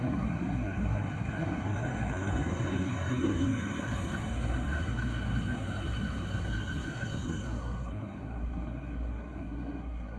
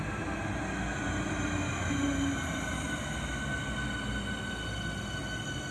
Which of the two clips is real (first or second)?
second